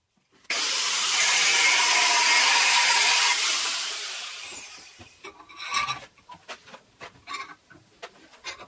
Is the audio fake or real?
fake